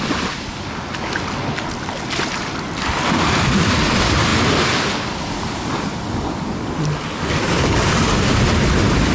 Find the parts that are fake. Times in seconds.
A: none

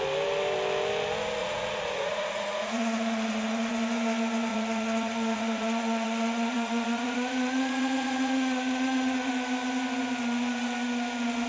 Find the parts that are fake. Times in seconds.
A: 1.4-3.7 (vocoder, Vocos); 4.5-9.3